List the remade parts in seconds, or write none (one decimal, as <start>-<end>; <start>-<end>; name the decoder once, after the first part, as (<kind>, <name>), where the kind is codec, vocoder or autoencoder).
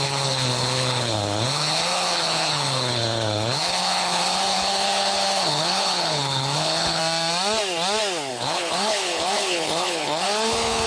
0.0-7.0 (codec, HILCodec); 8.3-10.9